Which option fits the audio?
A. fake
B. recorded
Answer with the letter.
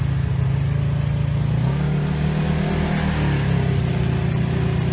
B